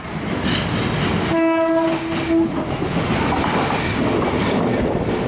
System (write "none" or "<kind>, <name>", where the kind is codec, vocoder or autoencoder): none